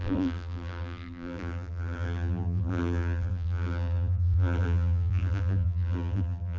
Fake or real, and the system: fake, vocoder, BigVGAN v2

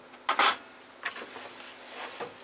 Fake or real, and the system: real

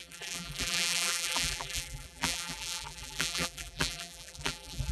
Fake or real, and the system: fake, vocoder, BigVGAN v2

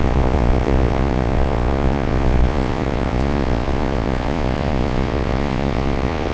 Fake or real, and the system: fake, vocoder, Vocos